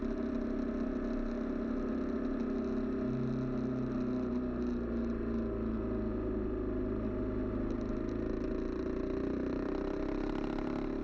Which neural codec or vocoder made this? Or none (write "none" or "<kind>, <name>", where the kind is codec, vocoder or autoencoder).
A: none